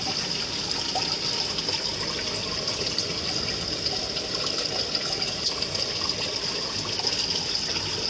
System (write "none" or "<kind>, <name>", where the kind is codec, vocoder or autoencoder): none